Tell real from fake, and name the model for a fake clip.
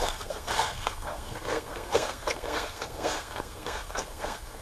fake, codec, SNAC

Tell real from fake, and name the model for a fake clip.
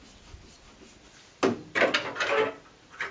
real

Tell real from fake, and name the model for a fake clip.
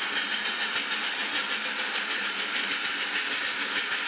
real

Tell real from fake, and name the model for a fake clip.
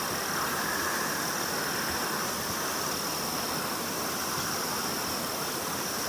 real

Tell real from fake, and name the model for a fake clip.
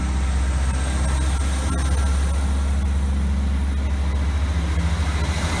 real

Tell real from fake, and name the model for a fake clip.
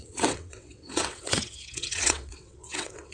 fake, vocoder, WaveNeXt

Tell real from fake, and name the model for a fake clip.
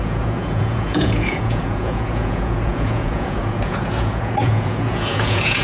fake, vocoder, Vocos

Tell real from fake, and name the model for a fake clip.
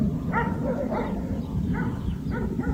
fake, vocoder, BigVGAN v2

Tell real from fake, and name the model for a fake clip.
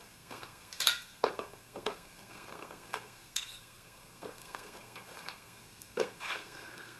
fake, codec, SNAC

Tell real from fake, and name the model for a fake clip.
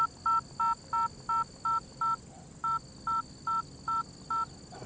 real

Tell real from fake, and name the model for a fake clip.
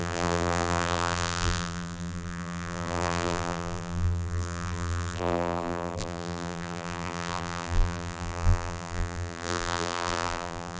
fake, vocoder, BigVGAN v2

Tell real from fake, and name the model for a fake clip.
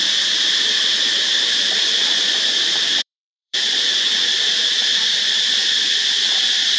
fake, vocoder, BigVGAN v2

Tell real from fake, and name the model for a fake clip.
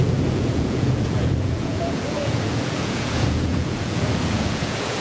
fake, vocoder, Vocos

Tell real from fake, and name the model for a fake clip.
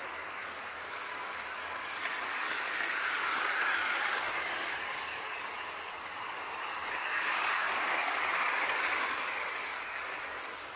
fake, codec, DAC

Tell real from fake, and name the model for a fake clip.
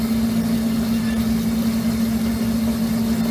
real